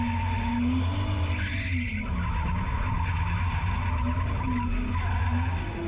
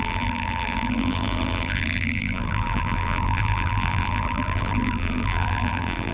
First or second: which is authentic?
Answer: first